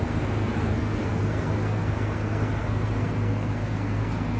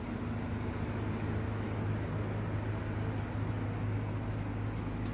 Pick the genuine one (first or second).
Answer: second